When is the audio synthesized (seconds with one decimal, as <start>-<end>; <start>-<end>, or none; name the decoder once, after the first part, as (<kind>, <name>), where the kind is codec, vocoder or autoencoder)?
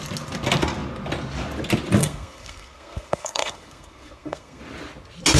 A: 2.0-4.6 (codec, SNAC)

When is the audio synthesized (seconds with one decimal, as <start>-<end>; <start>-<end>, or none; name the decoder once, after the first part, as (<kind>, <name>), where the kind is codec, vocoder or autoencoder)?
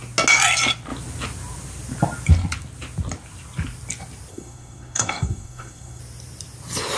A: 4.3-6.0 (codec, SNAC)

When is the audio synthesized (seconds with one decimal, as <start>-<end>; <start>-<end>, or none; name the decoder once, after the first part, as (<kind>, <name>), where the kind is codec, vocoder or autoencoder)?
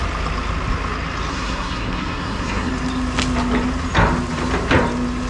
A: 1.3-2.7 (codec, SNAC)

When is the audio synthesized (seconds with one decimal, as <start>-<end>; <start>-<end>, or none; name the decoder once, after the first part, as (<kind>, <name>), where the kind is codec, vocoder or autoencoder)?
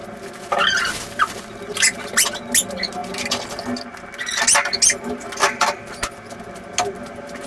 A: none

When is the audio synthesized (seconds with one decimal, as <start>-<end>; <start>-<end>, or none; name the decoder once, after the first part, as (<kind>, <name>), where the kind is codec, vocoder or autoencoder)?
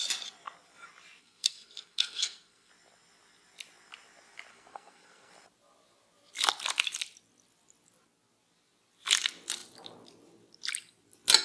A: 1.2-2.7 (codec, SNAC); 4.5-5.3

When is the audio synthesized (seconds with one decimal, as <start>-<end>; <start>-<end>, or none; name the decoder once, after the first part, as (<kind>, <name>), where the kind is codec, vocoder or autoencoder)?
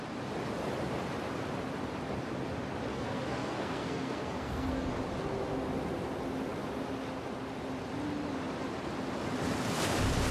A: 2.9-4.9 (codec, SNAC)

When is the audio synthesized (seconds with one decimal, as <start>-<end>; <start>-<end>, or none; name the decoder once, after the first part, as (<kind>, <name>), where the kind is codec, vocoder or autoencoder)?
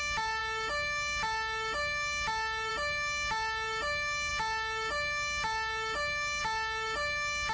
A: none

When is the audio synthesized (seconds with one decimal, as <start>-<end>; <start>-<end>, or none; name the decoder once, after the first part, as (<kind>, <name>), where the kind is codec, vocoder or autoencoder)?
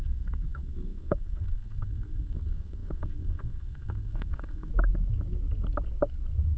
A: 0.0-4.7 (codec, SNAC)